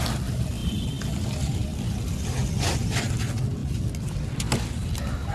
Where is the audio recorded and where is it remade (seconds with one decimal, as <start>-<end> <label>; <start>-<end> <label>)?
0.0-5.3 recorded